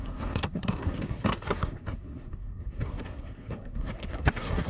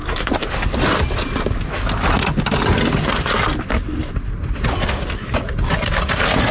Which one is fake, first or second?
first